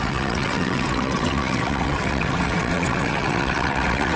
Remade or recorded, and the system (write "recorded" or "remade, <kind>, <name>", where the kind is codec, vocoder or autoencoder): remade, vocoder, WaveNeXt